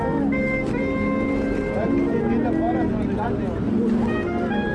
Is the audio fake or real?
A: real